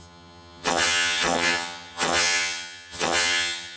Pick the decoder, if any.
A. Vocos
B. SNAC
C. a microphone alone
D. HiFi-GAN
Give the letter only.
D